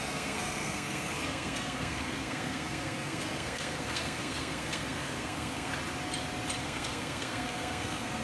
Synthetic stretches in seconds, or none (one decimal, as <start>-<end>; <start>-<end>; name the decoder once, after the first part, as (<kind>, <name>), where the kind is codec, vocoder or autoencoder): 0.0-5.7 (codec, SNAC); 6.6-8.2